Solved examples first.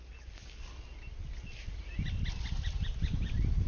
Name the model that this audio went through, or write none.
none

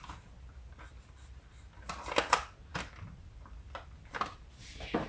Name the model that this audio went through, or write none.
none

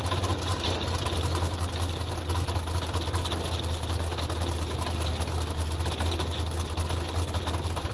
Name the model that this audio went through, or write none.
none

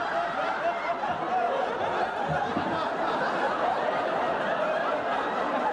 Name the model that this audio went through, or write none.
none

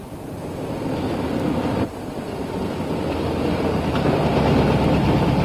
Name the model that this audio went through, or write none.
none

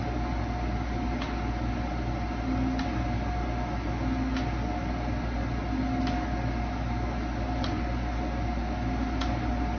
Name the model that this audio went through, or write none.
none